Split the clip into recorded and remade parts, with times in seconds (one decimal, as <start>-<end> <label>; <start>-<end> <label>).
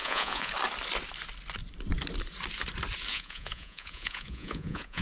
0.0-0.5 remade; 0.5-3.1 recorded; 3.1-5.0 remade